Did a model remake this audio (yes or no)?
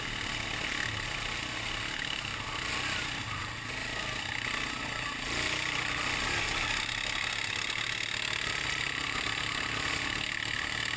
no